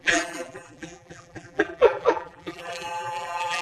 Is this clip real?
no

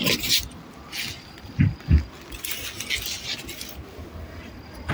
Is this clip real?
yes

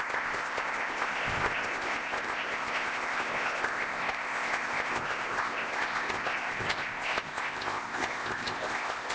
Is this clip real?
no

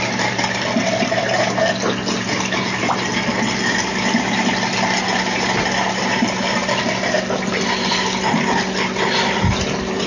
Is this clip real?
yes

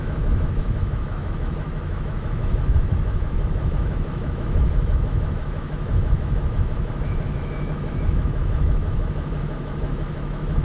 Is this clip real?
no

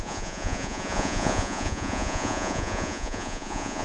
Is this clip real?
no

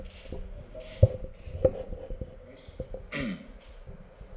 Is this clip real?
yes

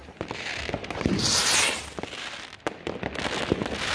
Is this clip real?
yes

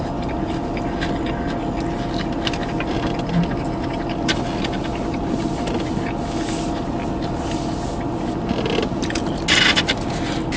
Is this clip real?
yes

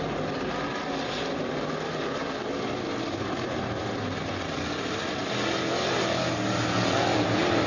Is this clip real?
yes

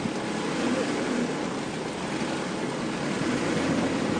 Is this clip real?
yes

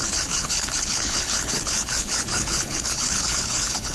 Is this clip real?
no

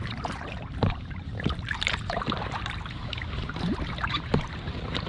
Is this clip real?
no